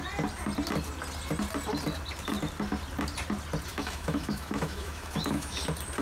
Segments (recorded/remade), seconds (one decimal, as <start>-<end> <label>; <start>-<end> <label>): 0.0-3.7 recorded; 3.7-5.6 remade; 5.6-6.0 recorded